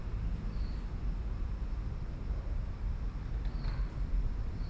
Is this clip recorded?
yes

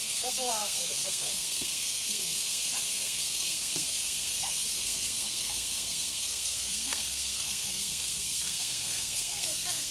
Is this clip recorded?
no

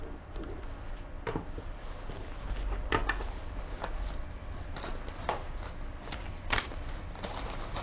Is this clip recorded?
yes